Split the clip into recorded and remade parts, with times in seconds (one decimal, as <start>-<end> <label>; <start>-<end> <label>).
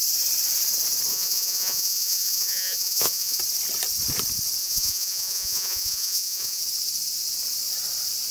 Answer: 0.0-1.1 recorded; 1.1-3.4 remade; 3.4-4.6 recorded; 4.6-6.6 remade; 6.6-8.3 recorded